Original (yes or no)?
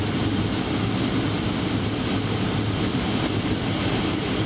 yes